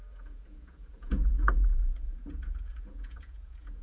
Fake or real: fake